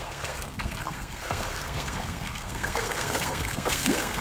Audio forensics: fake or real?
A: fake